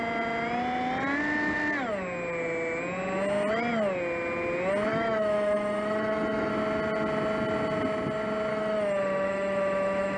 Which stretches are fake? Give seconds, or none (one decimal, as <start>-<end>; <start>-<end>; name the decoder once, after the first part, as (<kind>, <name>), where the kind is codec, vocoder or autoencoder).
4.9-6.5 (autoencoder, DAC-VAE); 8.5-10.2